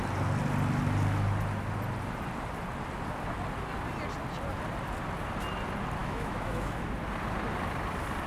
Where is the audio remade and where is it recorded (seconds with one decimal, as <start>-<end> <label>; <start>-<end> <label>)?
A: 0.0-6.0 recorded; 6.0-6.9 remade; 6.9-8.3 recorded